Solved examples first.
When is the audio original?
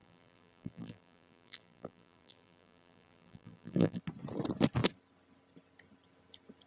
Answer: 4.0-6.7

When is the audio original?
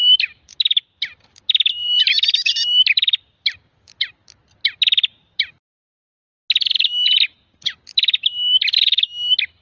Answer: 0.0-1.8; 3.2-9.6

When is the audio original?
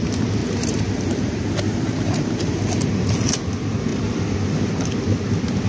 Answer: 0.0-0.4; 2.9-5.7